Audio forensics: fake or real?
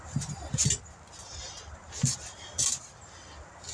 real